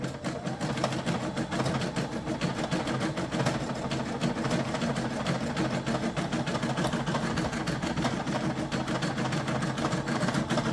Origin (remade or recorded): recorded